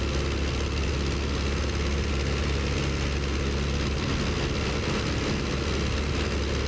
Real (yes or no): yes